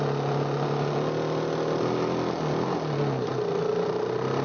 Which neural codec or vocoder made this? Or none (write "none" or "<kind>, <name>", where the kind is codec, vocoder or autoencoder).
none